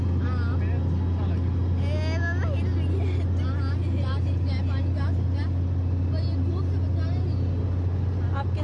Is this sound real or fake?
real